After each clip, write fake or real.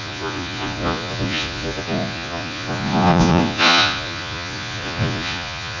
fake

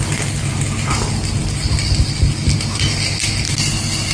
real